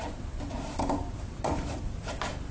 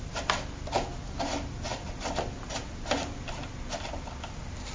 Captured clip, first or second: second